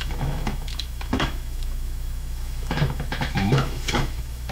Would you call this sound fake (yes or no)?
yes